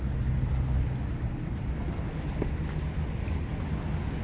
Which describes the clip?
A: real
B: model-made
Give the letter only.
A